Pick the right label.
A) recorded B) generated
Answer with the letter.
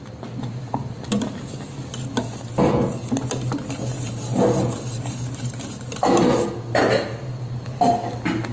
A